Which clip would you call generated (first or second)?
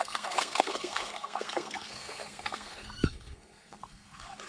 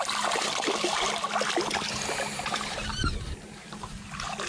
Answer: first